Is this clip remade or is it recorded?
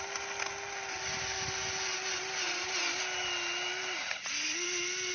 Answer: recorded